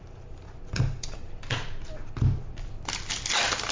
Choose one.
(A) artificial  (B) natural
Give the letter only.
B